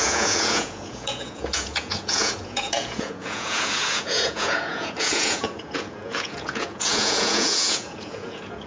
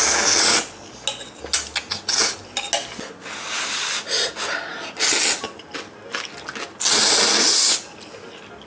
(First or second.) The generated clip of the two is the first